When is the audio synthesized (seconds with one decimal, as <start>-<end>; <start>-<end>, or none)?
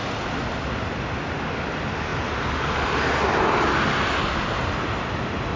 none